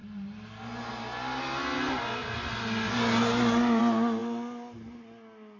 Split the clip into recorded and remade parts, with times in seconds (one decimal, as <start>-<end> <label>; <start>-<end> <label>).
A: 0.0-5.6 recorded